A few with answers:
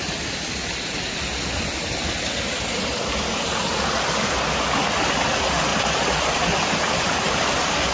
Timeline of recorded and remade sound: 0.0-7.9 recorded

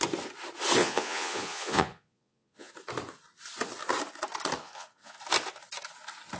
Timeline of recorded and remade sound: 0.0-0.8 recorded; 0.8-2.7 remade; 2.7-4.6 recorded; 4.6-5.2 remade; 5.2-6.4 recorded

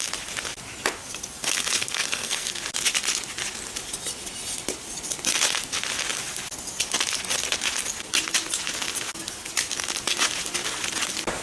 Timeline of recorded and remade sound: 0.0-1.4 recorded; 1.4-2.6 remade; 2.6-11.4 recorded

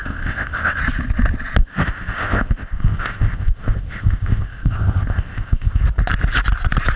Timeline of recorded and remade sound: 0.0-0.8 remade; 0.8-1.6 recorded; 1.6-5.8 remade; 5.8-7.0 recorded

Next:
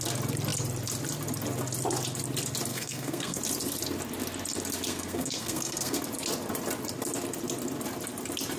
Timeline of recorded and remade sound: 0.0-2.7 recorded; 2.7-3.4 remade; 3.4-4.9 recorded; 4.9-6.0 remade; 6.0-8.6 recorded